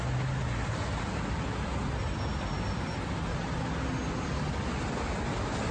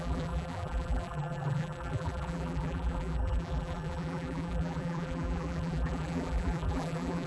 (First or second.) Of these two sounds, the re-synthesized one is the second